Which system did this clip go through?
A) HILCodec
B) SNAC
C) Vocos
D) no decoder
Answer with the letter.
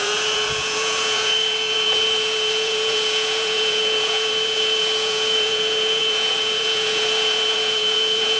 C